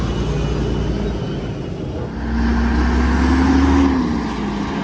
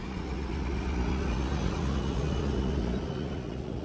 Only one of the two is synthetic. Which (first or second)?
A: second